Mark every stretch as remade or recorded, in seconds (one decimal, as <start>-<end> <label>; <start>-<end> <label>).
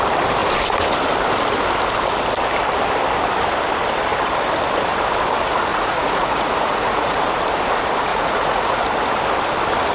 0.0-5.7 recorded; 5.7-7.2 remade; 7.2-8.1 recorded; 8.1-8.8 remade; 8.8-9.9 recorded